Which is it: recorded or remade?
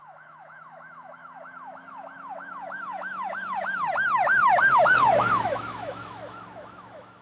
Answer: remade